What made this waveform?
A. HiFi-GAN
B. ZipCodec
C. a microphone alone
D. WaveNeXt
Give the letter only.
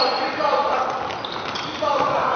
C